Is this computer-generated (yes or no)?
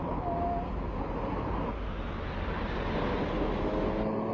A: no